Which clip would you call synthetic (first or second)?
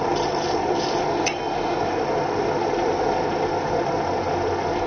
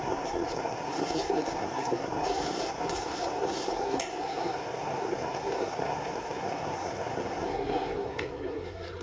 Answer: second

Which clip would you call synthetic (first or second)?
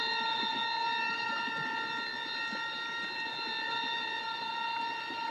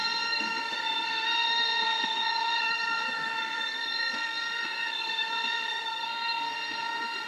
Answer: second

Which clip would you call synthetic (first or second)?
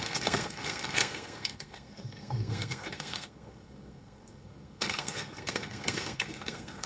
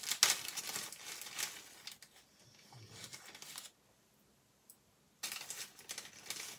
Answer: first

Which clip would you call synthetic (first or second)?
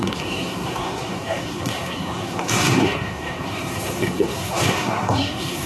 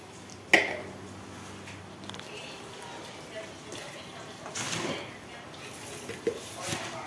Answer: first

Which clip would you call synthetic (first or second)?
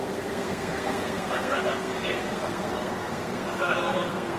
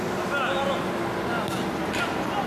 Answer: first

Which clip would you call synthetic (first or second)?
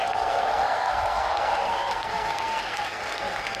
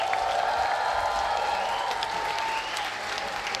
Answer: first